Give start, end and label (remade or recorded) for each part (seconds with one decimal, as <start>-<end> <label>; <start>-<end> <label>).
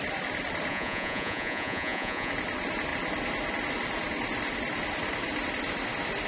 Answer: 0.0-0.7 recorded; 0.7-2.3 remade; 2.3-6.3 recorded